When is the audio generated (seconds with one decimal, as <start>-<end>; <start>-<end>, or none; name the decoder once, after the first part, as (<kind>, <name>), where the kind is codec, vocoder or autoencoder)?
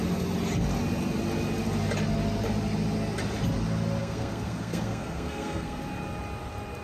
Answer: 4.0-5.8 (codec, SNAC)